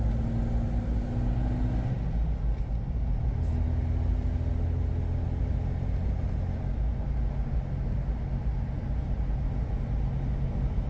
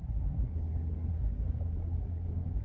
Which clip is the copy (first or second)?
second